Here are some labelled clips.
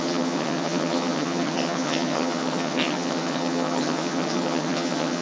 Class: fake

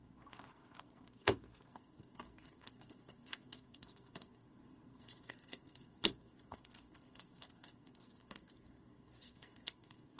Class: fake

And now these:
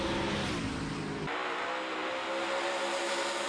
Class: real